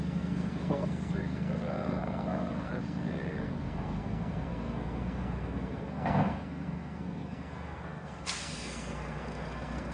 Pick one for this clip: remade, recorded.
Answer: remade